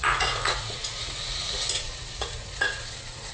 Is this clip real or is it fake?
fake